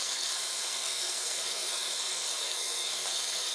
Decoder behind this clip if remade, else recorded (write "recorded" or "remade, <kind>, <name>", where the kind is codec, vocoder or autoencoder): remade, codec, SNAC